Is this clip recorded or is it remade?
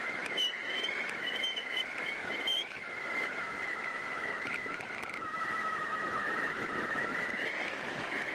remade